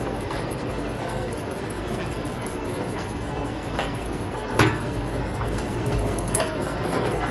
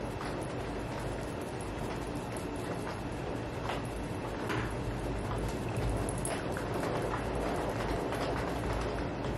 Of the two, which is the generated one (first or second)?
first